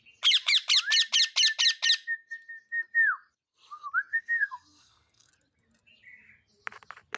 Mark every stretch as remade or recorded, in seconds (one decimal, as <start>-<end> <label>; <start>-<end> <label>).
0.0-4.1 recorded; 4.1-5.3 remade; 5.3-7.2 recorded